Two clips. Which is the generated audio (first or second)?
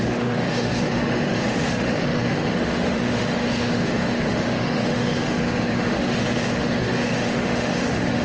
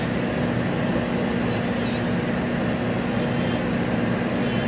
first